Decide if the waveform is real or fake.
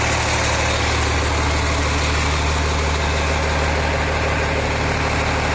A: real